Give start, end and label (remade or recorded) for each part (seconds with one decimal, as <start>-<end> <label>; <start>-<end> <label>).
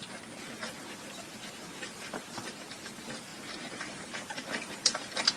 0.0-1.3 recorded; 1.3-2.7 remade; 2.7-3.3 recorded; 3.3-5.0 remade; 5.0-5.4 recorded